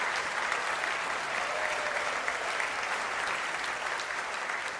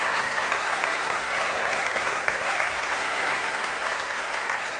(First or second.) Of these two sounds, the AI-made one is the second